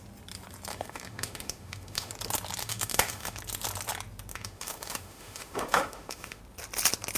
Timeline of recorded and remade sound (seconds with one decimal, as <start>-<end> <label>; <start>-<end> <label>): 0.0-0.7 recorded; 0.7-2.1 remade; 2.1-2.6 recorded; 2.6-3.4 remade; 3.4-4.3 recorded; 4.3-6.4 remade; 6.4-7.2 recorded